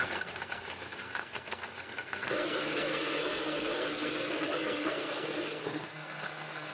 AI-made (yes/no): yes